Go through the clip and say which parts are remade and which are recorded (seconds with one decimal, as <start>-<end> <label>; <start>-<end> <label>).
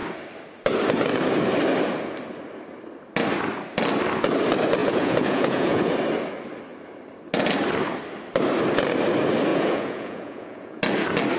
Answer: 0.0-4.8 recorded; 4.8-5.9 remade; 5.9-9.5 recorded; 9.5-10.8 remade; 10.8-11.4 recorded